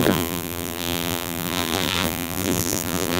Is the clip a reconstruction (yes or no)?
yes